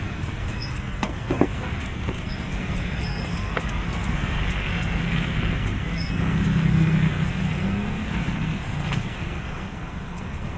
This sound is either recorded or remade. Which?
remade